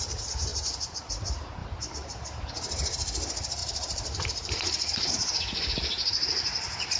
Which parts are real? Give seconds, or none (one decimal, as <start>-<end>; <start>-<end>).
0.0-0.5; 1.1-1.6; 2.4-3.6; 5.1-7.0